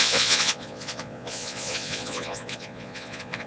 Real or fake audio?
fake